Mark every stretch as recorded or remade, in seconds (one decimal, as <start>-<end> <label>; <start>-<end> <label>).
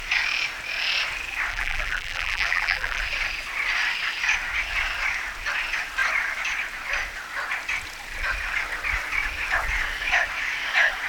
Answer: 0.0-1.5 recorded; 1.5-3.0 remade; 3.0-11.1 recorded